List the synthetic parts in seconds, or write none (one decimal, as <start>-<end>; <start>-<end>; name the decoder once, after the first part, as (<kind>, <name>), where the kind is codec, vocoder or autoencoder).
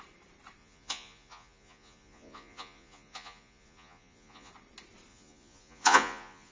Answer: 0.6-4.5 (vocoder, Vocos); 5.1-6.5